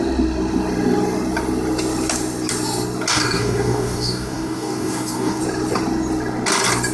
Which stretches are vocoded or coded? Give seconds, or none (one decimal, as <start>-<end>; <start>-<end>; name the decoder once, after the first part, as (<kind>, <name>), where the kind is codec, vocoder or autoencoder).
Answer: 3.1-5.4 (codec, DAC)